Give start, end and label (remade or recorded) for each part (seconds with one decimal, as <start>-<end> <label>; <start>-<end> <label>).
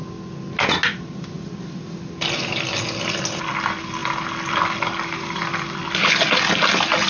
0.0-7.1 recorded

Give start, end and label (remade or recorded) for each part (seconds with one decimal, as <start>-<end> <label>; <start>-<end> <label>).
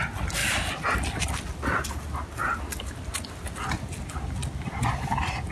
0.0-5.5 recorded